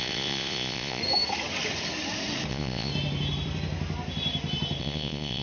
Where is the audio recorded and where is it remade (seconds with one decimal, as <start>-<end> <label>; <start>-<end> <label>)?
0.0-1.0 remade; 1.0-2.5 recorded; 2.5-2.9 remade; 2.9-4.8 recorded; 4.8-5.4 remade